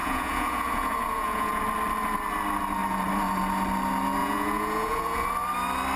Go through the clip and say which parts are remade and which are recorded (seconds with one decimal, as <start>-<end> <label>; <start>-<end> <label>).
0.0-1.6 remade; 1.6-4.2 recorded; 4.2-5.3 remade; 5.3-6.0 recorded